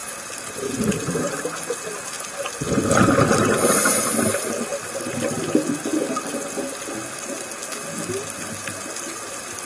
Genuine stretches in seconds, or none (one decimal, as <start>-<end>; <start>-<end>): 1.3-4.7; 5.4-9.7